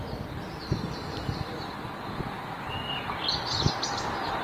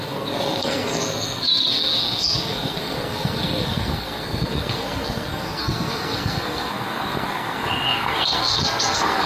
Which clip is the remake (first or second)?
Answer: second